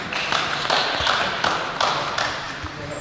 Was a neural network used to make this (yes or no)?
yes